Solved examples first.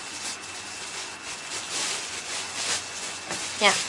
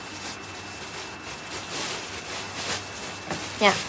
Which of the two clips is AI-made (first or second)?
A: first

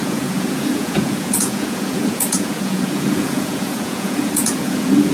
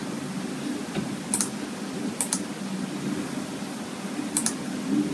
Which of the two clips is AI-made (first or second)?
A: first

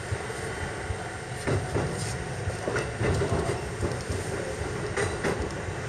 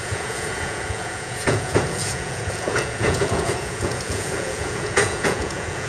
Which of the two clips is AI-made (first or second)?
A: second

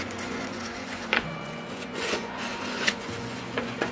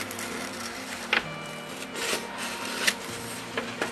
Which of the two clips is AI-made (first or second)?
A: first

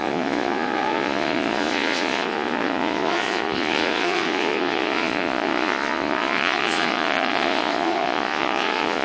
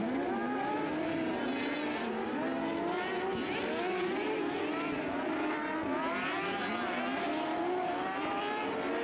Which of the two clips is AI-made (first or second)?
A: first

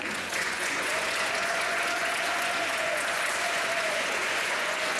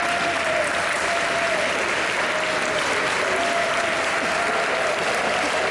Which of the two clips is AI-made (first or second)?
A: first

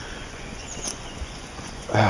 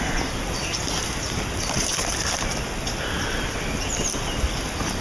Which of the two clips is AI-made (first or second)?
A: first